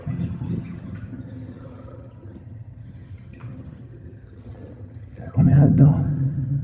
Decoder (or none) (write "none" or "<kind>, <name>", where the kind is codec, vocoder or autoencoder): vocoder, HiFi-GAN